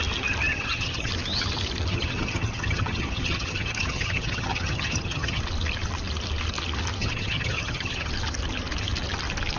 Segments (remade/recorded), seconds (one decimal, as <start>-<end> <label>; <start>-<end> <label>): 0.0-0.5 recorded; 0.5-1.1 remade; 1.1-1.9 recorded; 1.9-5.4 remade; 5.4-7.0 recorded; 7.0-8.1 remade; 8.1-9.6 recorded